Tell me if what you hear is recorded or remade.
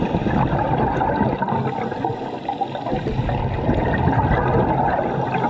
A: recorded